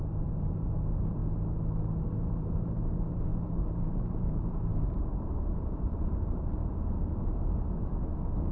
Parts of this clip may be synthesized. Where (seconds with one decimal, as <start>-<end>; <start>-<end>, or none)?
0.0-1.2; 2.0-4.7; 5.8-6.6